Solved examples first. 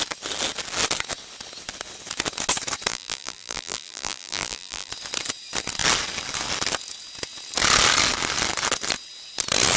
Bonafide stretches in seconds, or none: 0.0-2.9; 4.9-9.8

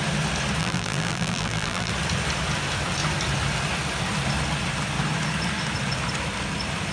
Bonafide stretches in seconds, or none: 0.0-0.6; 1.9-6.9